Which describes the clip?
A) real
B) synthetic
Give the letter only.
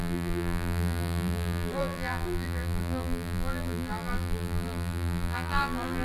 B